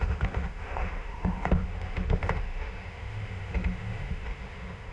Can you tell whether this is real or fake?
fake